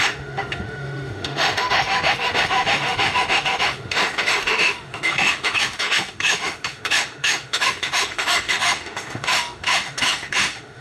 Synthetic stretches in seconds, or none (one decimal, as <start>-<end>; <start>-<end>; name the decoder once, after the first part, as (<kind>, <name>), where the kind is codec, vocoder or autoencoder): 0.0-10.8 (autoencoder, DAC-VAE)